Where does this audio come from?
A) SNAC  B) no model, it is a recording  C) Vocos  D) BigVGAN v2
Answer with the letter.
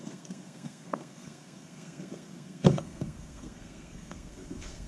A